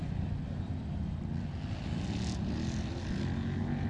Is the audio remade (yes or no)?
no